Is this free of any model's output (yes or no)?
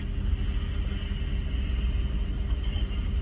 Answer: yes